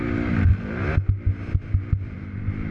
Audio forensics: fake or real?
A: real